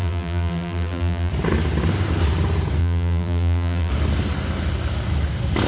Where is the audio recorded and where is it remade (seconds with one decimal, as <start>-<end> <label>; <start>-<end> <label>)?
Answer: 0.0-1.3 remade; 1.3-2.8 recorded; 2.8-3.9 remade; 3.9-5.7 recorded